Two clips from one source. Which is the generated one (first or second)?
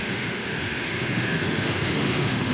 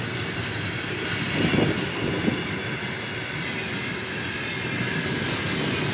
first